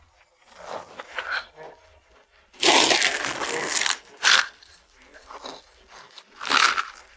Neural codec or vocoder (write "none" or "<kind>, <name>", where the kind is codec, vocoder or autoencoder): none